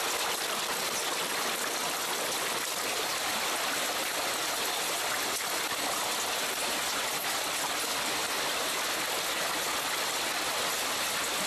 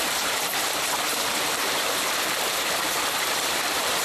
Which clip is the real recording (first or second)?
first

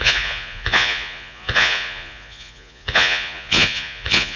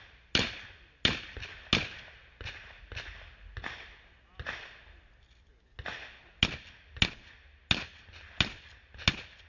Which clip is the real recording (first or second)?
second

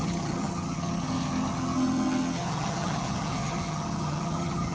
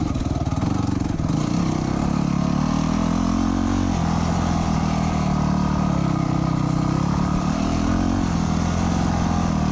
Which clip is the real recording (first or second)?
second